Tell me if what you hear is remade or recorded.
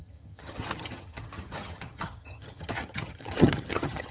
remade